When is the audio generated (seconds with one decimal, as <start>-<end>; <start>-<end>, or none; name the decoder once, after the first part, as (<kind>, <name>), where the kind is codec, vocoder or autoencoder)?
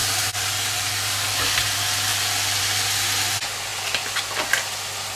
0.0-1.4 (vocoder, BigVGAN v2); 2.1-2.6